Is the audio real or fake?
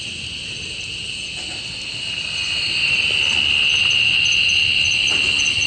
real